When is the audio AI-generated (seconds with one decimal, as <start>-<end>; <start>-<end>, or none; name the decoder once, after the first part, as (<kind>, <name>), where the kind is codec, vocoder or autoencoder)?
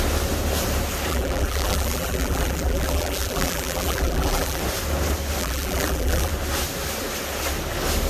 1.1-4.6 (vocoder, BigVGAN v2); 5.4-6.3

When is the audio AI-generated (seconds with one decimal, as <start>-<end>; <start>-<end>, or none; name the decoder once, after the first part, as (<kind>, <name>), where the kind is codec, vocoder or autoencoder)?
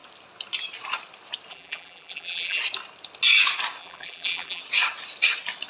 1.5-2.6 (vocoder, BigVGAN v2); 3.8-4.6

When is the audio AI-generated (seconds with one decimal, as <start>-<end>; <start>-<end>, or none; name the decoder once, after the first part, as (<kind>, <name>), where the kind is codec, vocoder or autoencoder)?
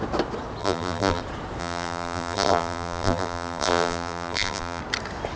0.6-1.2 (vocoder, BigVGAN v2); 1.6-4.8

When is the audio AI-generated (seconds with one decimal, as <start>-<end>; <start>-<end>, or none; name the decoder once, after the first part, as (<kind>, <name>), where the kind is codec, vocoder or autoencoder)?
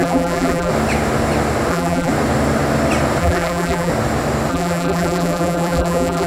0.0-0.7 (vocoder, BigVGAN v2); 1.7-2.1; 3.2-3.9; 4.5-6.3